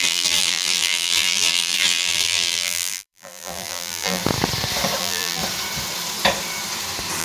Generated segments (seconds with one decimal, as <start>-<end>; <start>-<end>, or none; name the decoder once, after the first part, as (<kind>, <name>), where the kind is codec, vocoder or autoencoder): 0.0-4.2 (vocoder, BigVGAN v2); 5.0-5.4